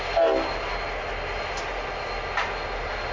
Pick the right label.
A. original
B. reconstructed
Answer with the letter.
A